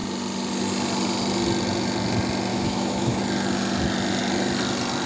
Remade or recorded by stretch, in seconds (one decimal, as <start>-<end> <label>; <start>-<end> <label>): 0.0-2.5 recorded; 2.5-3.2 remade; 3.2-5.1 recorded